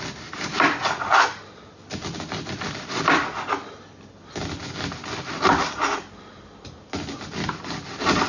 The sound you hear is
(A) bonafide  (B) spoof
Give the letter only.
A